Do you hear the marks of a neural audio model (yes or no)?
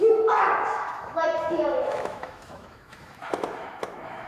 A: yes